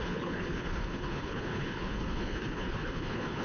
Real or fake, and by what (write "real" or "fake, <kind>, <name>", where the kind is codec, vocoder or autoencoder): fake, codec, HILCodec